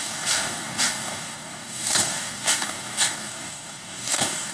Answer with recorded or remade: remade